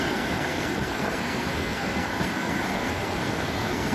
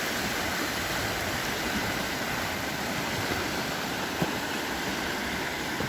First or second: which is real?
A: second